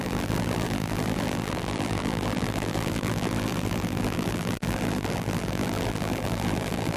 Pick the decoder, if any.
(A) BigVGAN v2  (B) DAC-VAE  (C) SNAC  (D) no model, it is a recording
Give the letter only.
A